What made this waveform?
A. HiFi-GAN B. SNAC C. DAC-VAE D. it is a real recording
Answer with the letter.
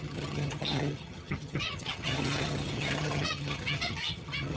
A